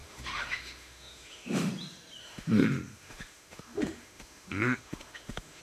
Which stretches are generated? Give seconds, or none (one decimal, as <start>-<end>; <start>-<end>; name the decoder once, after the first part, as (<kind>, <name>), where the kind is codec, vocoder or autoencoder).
0.0-1.7 (autoencoder, DAC-VAE); 2.2-5.6